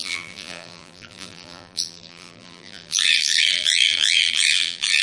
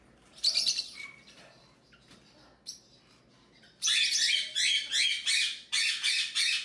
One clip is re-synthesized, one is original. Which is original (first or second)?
second